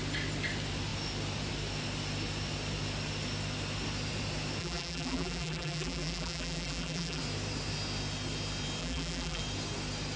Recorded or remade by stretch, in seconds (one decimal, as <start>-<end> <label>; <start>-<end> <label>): 0.0-4.6 recorded; 4.6-7.2 remade; 7.2-8.8 recorded; 8.8-9.4 remade; 9.4-10.2 recorded